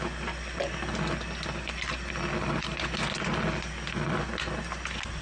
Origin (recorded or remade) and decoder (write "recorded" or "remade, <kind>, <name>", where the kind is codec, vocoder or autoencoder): recorded